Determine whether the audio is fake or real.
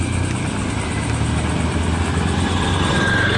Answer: real